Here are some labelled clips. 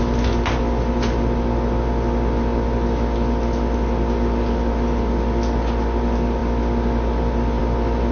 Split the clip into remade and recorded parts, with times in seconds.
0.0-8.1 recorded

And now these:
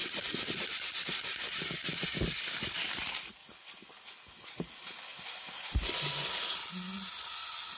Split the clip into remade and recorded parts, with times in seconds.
0.0-7.8 recorded

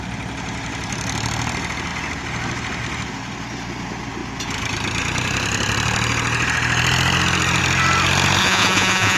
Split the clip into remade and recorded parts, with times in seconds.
0.0-8.4 recorded; 8.4-9.2 remade

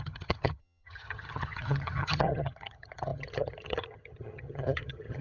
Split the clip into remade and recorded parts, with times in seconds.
0.0-5.2 remade